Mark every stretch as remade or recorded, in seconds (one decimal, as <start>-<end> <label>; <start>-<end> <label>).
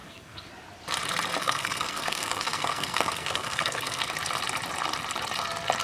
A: 0.0-0.5 remade; 0.5-1.4 recorded; 1.4-4.0 remade; 4.0-5.8 recorded